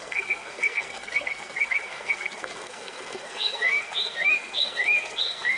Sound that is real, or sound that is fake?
fake